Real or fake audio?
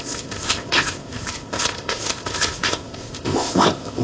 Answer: fake